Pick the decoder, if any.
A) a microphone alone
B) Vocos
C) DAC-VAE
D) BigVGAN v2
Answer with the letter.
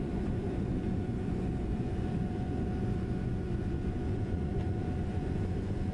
B